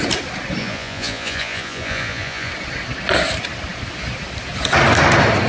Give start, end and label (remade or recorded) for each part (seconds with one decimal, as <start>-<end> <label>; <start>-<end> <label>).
0.0-0.6 recorded; 0.6-2.5 remade; 2.5-5.5 recorded